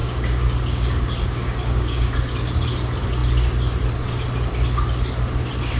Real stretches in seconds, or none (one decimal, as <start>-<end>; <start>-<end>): 2.1-5.8